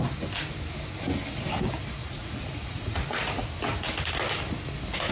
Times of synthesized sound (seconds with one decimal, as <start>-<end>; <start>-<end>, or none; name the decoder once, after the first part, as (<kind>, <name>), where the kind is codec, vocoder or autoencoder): 2.0-3.4 (vocoder, Vocos)

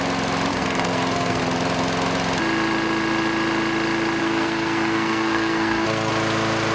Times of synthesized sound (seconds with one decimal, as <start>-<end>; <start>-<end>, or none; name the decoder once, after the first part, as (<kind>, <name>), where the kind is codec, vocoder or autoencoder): 0.5-1.4 (codec, SNAC); 4.2-6.1

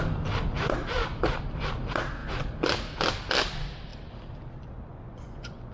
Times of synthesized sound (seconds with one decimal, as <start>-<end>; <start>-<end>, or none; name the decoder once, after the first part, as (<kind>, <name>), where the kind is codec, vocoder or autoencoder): 4.9-5.7 (vocoder, Vocos)

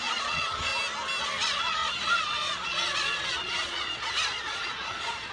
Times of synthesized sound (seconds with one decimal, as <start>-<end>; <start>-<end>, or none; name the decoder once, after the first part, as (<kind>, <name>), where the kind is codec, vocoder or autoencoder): 0.0-0.7 (vocoder, Vocos); 1.2-5.3

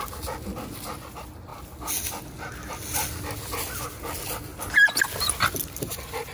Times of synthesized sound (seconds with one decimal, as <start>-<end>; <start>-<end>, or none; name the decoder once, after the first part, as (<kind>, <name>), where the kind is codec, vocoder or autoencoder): none

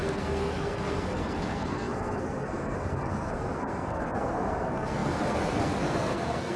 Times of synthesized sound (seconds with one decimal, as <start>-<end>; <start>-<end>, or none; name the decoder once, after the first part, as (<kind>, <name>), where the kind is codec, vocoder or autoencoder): 0.0-6.6 (codec, SNAC)

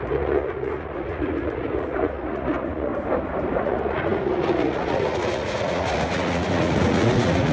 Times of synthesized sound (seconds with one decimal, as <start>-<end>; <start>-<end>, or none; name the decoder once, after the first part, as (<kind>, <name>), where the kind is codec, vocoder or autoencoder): 0.0-2.9 (vocoder, Vocos); 3.6-7.5

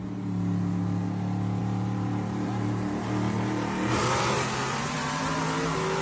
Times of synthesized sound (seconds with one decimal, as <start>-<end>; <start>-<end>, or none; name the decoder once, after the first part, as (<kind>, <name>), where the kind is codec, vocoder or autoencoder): 1.6-5.2 (vocoder, BigVGAN v2)